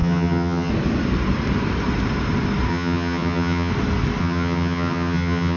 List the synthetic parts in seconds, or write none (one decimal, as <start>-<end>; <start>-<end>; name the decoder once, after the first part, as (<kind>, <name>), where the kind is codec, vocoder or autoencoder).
0.0-0.7 (vocoder, HiFi-GAN); 2.7-3.7; 4.2-5.6